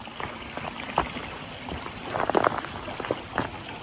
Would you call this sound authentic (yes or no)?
yes